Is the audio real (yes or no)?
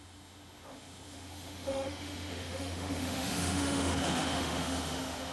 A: no